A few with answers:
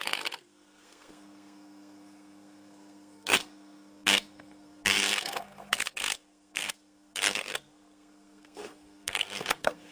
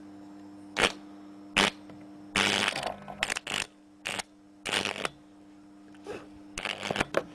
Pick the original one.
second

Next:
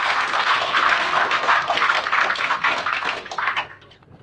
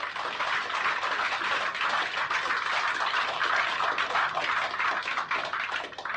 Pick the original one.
second